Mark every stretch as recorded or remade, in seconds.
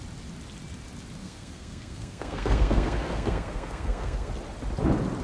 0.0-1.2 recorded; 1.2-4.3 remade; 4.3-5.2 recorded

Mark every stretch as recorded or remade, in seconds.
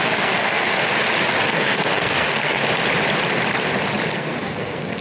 0.0-0.8 remade; 0.8-1.5 recorded; 1.5-2.6 remade; 2.6-4.1 recorded; 4.1-5.0 remade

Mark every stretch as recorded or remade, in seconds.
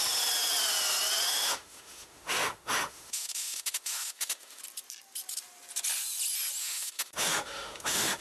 0.0-1.3 recorded; 1.3-4.6 remade; 4.6-6.6 recorded; 6.6-8.2 remade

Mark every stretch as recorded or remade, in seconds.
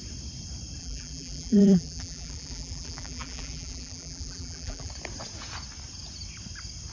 0.0-0.8 recorded; 0.8-4.9 remade; 4.9-6.9 recorded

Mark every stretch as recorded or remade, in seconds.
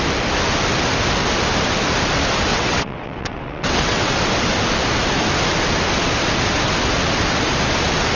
0.0-2.5 recorded; 2.5-4.1 remade; 4.1-8.2 recorded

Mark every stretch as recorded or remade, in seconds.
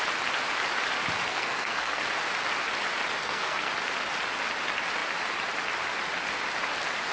0.0-1.3 recorded; 1.3-2.0 remade; 2.0-3.2 recorded; 3.2-3.7 remade; 3.7-7.1 recorded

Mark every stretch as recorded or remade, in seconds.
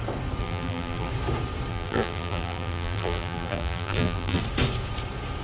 0.0-0.4 recorded; 0.4-1.1 remade; 1.1-1.7 recorded; 1.7-4.4 remade; 4.4-5.4 recorded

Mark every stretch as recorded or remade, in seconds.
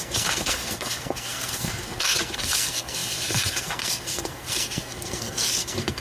0.0-6.0 remade